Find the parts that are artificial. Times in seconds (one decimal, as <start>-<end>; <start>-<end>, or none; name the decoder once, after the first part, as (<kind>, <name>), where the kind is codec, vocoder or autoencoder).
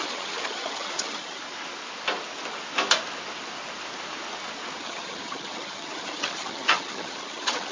0.0-1.4 (vocoder, HiFi-GAN); 4.8-7.7